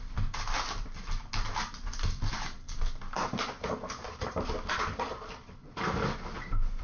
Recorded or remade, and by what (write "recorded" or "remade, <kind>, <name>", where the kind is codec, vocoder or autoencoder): recorded